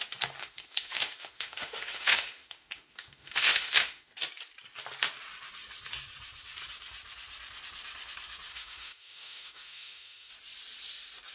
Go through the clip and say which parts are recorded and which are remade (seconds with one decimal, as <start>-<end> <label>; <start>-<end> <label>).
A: 0.0-0.4 recorded; 0.4-4.1 remade; 4.1-8.5 recorded; 8.5-10.3 remade; 10.3-11.3 recorded